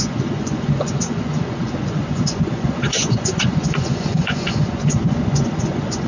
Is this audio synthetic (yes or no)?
yes